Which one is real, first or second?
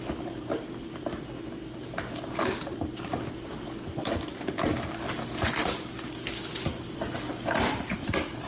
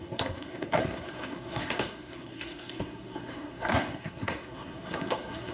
first